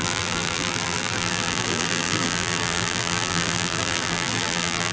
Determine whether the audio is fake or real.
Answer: fake